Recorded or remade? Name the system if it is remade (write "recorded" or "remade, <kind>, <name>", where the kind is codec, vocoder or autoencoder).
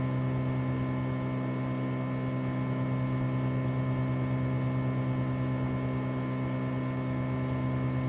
recorded